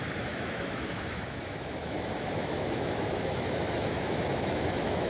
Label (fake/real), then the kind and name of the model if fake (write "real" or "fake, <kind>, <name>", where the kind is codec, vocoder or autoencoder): fake, autoencoder, DAC-VAE